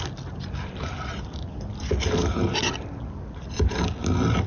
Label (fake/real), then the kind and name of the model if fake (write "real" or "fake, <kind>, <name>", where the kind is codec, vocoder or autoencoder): real